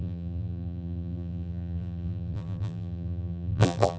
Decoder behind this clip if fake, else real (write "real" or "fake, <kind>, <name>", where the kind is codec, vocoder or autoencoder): fake, vocoder, BigVGAN v2